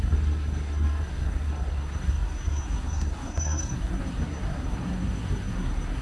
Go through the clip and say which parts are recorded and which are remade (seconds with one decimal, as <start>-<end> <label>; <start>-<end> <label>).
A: 0.0-6.0 remade